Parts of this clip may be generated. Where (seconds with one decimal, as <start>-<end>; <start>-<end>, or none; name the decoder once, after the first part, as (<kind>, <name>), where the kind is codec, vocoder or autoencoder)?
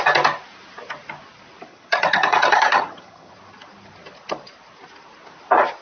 1.7-3.3 (vocoder, HiFi-GAN)